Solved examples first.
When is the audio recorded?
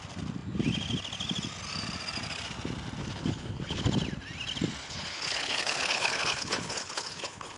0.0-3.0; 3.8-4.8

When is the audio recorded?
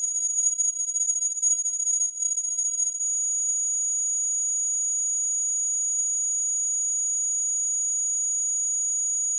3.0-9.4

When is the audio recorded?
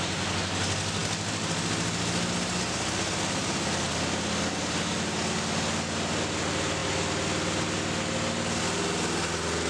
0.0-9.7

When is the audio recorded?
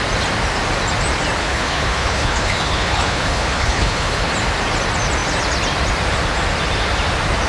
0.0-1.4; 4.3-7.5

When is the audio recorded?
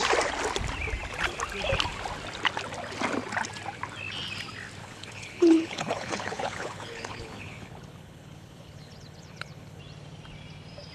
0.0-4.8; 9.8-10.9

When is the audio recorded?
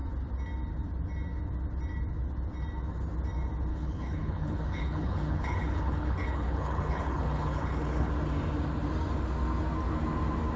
0.0-3.7; 8.1-10.6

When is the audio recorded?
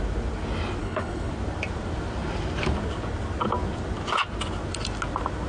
0.0-0.8; 1.3-5.5